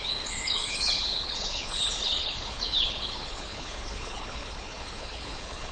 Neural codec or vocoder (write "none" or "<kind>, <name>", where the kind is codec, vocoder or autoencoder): codec, HILCodec